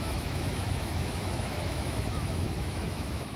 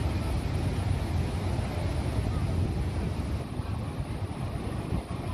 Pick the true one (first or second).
second